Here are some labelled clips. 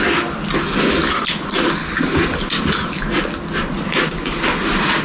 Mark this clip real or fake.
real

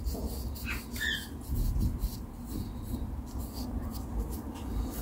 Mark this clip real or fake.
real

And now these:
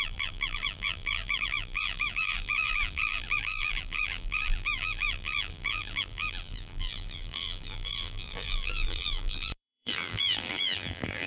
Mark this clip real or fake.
fake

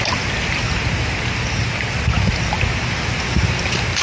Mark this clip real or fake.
real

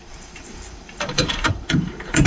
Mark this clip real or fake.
fake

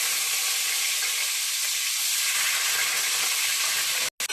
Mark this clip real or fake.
real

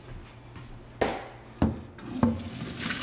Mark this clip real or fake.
real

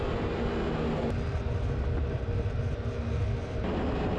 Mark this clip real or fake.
real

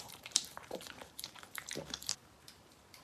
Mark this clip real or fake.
fake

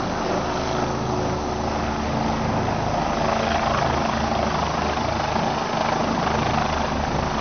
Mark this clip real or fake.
real